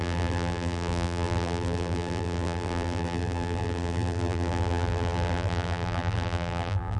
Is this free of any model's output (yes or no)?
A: no